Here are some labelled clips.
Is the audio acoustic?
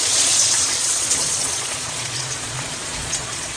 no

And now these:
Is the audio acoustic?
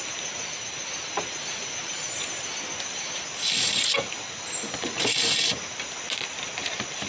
yes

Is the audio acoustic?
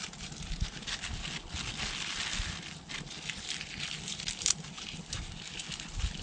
yes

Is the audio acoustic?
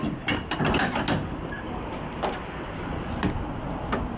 yes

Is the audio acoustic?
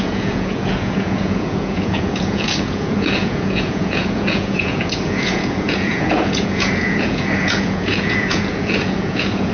no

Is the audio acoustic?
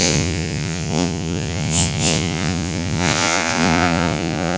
no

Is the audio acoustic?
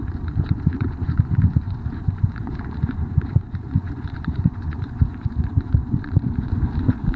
no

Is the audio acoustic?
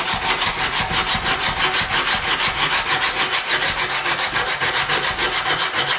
yes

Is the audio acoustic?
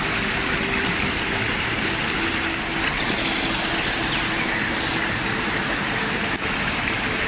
yes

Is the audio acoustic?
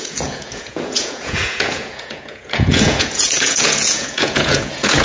no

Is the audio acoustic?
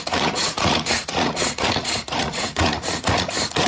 no